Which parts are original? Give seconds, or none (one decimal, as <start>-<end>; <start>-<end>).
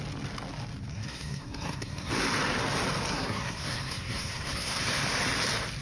0.0-0.9; 2.1-3.1; 4.8-5.8